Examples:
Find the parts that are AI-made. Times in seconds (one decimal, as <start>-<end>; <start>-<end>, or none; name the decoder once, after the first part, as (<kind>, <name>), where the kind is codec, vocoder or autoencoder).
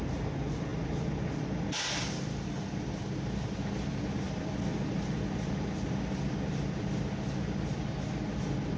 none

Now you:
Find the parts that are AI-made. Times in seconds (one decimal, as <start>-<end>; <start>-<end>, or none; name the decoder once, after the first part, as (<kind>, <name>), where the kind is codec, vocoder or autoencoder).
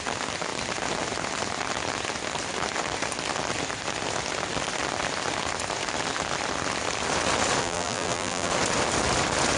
7.6-8.5 (vocoder, BigVGAN v2)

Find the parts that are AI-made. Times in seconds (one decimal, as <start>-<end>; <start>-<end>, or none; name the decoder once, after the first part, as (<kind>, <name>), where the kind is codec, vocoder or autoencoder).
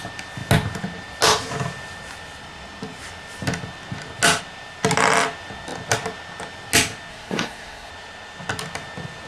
7.1-7.9 (codec, SNAC)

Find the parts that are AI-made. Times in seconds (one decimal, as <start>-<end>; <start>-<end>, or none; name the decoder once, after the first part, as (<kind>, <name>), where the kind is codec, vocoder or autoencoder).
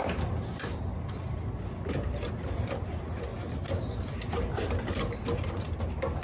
none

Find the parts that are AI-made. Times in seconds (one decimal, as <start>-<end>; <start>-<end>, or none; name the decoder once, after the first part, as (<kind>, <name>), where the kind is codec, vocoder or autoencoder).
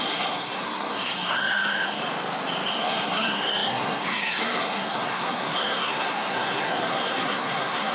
0.0-2.0 (codec, SNAC); 2.7-7.9